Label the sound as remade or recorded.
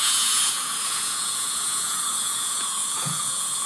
remade